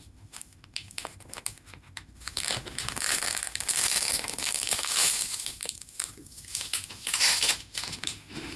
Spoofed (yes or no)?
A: yes